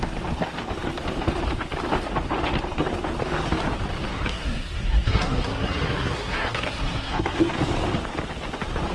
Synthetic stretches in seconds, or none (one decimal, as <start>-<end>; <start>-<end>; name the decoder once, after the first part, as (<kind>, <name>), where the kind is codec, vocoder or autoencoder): 4.1-7.5 (codec, SNAC)